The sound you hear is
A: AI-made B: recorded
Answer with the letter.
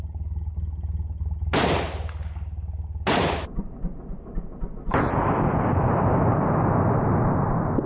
B